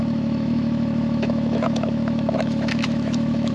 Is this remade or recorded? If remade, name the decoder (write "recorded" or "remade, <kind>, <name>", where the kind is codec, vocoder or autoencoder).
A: remade, autoencoder, DAC-VAE